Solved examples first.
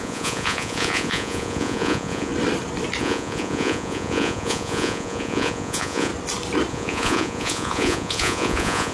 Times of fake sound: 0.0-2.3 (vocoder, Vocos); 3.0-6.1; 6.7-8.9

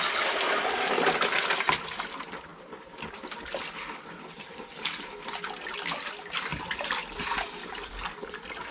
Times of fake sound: none

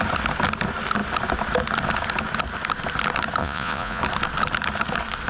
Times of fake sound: 3.4-4.0 (vocoder, Vocos)

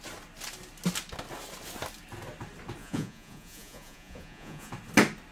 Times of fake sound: 2.8-4.7 (vocoder, Vocos)

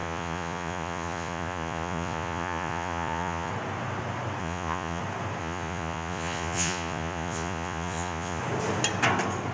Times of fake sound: 0.0-3.5 (vocoder, Vocos); 4.4-5.0; 5.4-8.4